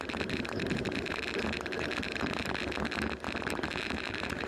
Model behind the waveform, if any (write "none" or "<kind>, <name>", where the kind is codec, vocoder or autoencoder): vocoder, BigVGAN v2